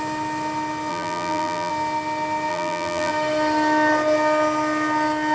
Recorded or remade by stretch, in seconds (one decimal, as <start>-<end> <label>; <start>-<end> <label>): 0.0-0.9 recorded; 0.9-1.7 remade; 1.7-2.5 recorded; 2.5-3.1 remade; 3.1-5.3 recorded